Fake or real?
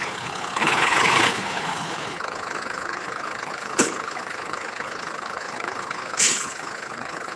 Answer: fake